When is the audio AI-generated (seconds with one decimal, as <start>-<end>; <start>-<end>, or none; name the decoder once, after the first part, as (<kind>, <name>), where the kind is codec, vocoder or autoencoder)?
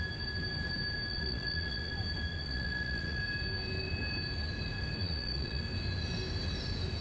1.1-1.9 (vocoder, Vocos); 2.3-3.2; 5.0-5.6